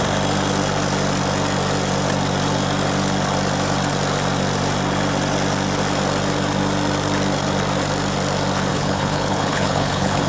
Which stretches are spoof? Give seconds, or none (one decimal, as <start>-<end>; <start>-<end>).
8.7-10.3